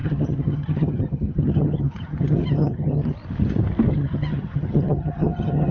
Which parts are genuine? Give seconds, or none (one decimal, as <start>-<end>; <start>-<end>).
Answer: 3.1-3.9